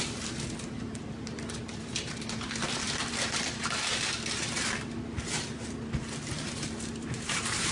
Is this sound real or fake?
fake